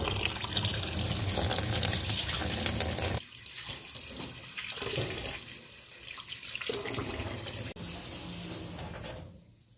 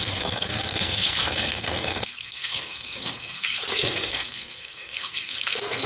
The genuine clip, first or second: first